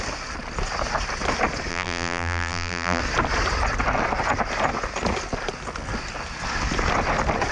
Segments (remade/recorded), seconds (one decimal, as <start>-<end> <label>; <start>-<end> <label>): 0.0-1.7 recorded; 1.7-3.0 remade; 3.0-7.5 recorded